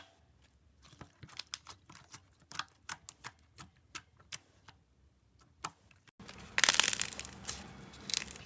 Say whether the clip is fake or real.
real